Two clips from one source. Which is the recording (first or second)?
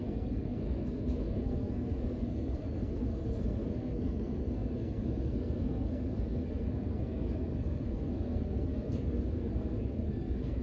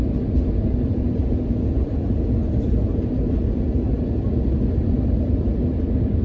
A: second